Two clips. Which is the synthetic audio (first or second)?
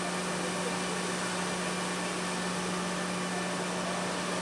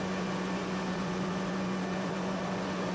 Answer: second